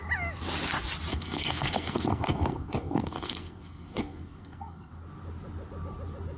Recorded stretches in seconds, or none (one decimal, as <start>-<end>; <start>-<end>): 0.0-1.1; 4.9-6.4